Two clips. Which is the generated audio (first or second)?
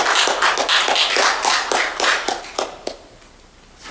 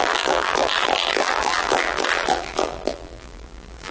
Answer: second